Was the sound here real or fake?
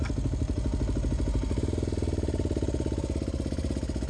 real